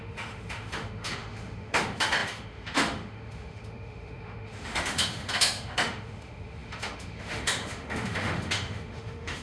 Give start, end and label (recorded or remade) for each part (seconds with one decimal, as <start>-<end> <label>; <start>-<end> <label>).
0.0-9.4 remade